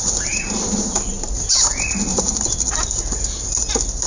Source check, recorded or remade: recorded